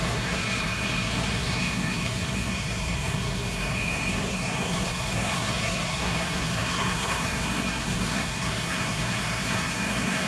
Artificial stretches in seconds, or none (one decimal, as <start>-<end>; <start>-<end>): 0.0-10.3